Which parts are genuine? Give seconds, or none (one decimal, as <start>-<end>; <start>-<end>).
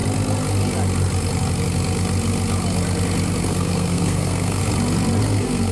0.0-3.4; 4.6-5.2